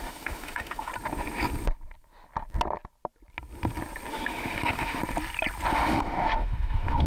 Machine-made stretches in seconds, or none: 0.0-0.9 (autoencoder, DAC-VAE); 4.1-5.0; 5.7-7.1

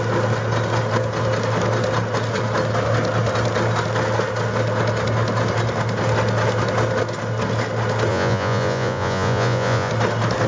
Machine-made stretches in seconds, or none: 8.1-9.9 (vocoder, Vocos)

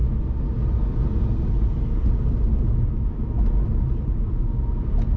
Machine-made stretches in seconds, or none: none

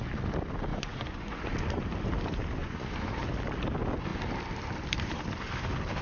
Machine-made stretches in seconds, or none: 0.7-1.8 (vocoder, Vocos); 2.6-3.1